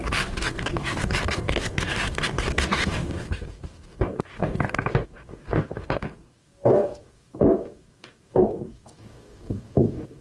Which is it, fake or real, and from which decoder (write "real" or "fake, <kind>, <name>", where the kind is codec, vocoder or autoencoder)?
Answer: fake, codec, DAC